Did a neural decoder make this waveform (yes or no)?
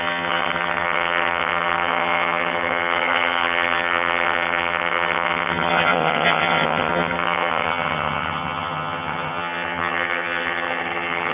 yes